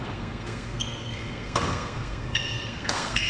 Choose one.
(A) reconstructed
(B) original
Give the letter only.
A